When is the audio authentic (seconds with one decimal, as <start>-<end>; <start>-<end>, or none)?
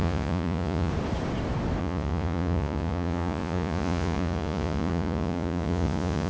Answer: 0.9-1.8